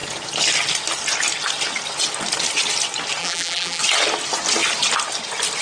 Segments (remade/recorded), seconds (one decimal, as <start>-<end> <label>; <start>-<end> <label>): 0.0-3.2 recorded; 3.2-3.8 remade; 3.8-5.6 recorded

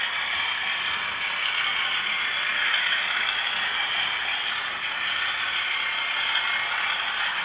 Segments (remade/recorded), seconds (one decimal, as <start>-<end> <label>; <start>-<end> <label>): 0.0-7.4 recorded

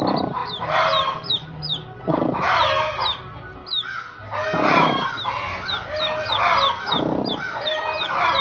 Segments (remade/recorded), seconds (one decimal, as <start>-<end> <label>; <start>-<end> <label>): 0.0-3.6 remade; 3.6-7.3 recorded; 7.3-8.4 remade

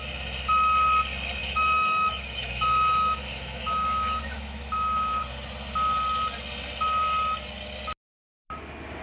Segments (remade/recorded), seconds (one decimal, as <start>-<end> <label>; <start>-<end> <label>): 0.0-1.4 recorded; 1.4-5.2 remade; 5.2-9.0 recorded

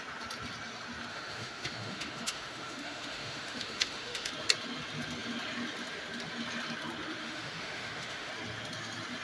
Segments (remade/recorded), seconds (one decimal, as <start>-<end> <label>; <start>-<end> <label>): 0.0-1.1 recorded; 1.1-4.3 remade; 4.3-7.2 recorded; 7.2-8.3 remade; 8.3-9.2 recorded